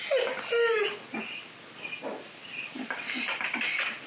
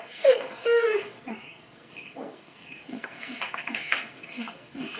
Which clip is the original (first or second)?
first